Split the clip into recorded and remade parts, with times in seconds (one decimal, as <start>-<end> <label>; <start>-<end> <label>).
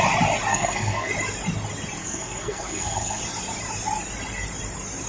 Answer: 0.0-0.5 recorded; 0.5-1.1 remade; 1.1-2.0 recorded; 2.0-3.2 remade; 3.2-5.1 recorded